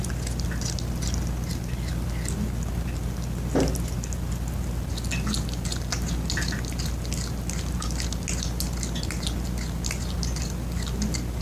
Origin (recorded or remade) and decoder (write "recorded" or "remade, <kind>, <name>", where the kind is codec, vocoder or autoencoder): recorded